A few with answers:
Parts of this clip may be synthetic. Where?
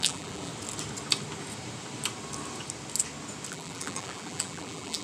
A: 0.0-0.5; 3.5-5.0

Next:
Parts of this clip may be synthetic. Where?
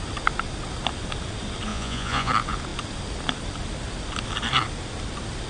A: 1.7-2.3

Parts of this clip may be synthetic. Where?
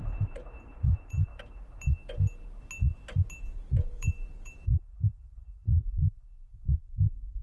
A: 0.0-1.3; 3.4-5.6; 6.8-7.4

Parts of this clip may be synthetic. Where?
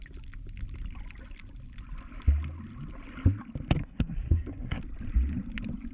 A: 3.8-4.8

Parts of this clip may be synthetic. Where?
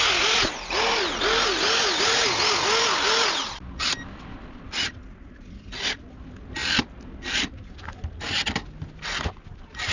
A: none